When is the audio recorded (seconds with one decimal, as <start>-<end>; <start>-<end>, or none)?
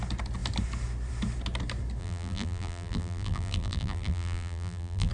0.0-2.0